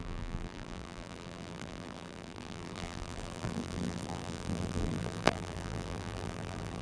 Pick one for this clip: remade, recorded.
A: remade